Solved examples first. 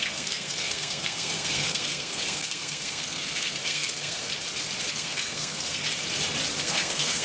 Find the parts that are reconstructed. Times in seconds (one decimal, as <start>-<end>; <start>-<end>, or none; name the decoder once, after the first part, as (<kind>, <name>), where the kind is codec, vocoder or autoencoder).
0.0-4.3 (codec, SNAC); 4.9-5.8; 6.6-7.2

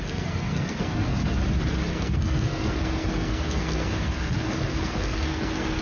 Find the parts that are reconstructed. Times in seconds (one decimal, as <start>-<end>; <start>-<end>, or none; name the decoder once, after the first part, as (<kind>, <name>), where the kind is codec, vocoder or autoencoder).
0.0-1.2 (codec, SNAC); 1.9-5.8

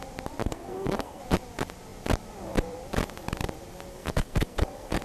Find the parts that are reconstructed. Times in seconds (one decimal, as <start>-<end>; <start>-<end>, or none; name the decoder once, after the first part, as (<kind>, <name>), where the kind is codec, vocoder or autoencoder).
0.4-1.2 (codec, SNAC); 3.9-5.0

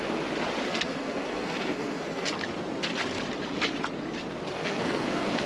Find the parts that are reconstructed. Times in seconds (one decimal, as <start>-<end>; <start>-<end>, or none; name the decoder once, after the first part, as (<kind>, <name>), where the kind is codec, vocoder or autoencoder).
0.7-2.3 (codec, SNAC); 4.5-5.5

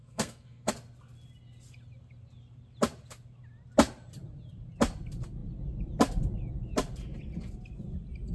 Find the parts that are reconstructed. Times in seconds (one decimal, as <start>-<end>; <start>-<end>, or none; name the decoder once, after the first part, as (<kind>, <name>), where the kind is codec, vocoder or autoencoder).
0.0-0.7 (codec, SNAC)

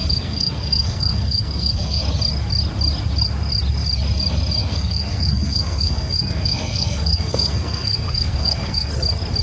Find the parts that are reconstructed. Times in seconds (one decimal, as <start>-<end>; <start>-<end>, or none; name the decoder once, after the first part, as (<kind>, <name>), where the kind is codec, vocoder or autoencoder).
0.0-2.0 (codec, SNAC); 4.6-8.9

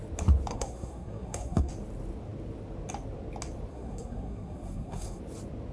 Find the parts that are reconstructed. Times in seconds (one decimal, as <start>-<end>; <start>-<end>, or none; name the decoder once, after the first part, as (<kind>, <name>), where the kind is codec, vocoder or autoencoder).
0.5-1.7 (codec, SNAC); 3.7-5.2

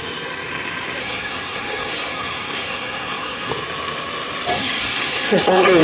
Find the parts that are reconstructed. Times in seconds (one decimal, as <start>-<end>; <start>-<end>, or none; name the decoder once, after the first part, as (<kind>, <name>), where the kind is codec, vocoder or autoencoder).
1.0-3.5 (codec, SNAC); 4.6-5.8